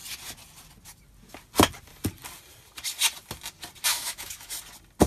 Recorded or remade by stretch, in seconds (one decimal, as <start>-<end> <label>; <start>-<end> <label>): 0.0-3.9 recorded; 3.9-4.5 remade; 4.5-5.1 recorded